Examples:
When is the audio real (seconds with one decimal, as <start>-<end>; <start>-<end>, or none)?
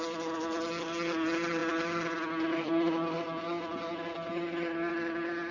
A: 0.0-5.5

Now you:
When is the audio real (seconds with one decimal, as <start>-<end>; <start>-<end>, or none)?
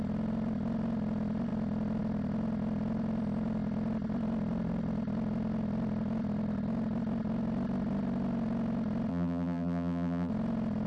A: 0.0-9.1; 10.3-10.9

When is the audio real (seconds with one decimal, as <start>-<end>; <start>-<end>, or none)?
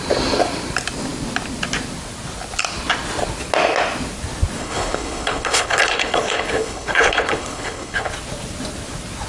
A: 0.0-4.6; 8.1-9.3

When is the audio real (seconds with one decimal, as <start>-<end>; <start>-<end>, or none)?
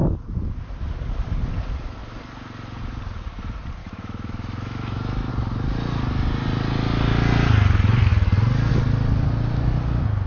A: 0.0-3.8; 5.3-10.3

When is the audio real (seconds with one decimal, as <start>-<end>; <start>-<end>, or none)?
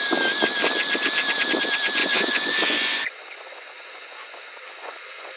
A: 0.0-2.0